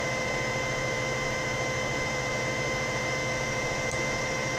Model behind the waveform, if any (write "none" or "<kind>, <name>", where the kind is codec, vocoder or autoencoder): vocoder, BigVGAN v2